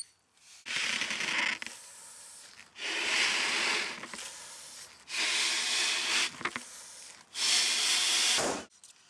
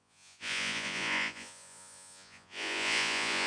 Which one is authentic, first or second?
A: first